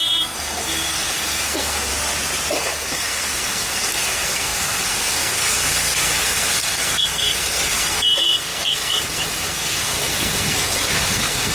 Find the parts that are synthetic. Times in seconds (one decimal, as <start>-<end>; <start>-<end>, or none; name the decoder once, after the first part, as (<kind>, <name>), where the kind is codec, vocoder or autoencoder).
0.0-1.9 (codec, SNAC); 2.5-11.5